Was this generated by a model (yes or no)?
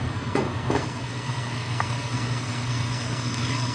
yes